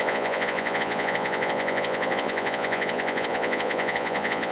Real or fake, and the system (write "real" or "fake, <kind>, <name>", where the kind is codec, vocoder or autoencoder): fake, vocoder, Vocos